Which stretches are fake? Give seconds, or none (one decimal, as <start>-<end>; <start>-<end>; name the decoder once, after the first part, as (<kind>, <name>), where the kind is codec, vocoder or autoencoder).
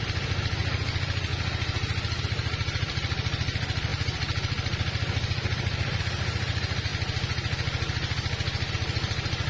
0.0-1.3 (vocoder, BigVGAN v2); 2.2-6.9; 8.7-9.5